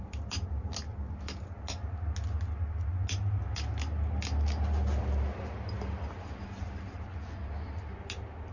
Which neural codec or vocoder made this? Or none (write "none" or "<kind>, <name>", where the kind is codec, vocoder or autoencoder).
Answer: none